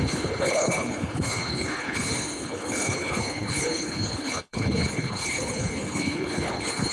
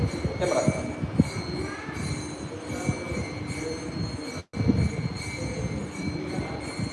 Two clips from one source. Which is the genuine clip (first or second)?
second